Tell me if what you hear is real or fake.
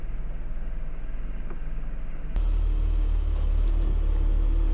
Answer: real